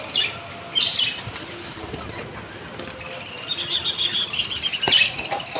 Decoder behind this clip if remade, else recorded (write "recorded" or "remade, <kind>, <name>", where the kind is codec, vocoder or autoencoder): recorded